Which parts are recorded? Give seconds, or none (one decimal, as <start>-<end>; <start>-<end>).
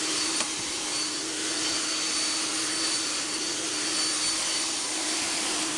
0.9-3.1; 3.7-4.4